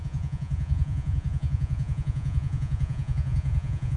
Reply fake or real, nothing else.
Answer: fake